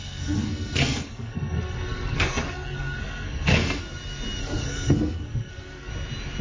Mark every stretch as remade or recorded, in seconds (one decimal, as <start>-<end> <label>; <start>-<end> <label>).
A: 0.0-3.8 remade; 3.8-4.4 recorded; 4.4-5.9 remade; 5.9-6.4 recorded